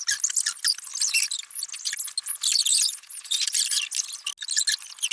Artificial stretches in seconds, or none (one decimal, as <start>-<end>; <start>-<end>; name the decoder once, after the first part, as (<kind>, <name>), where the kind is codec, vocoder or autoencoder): 2.7-3.3 (vocoder, Vocos)